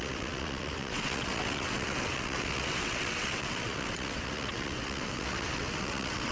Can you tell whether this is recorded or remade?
remade